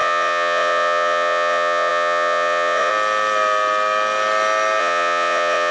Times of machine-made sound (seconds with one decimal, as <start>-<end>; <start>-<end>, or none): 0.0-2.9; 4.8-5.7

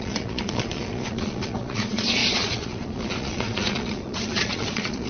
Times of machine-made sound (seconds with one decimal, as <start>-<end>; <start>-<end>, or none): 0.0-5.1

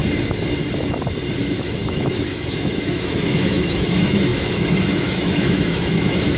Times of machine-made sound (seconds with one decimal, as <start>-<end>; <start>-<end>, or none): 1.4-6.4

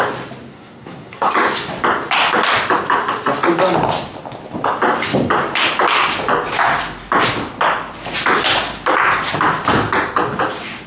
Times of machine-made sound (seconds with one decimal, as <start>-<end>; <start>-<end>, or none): 0.5-1.3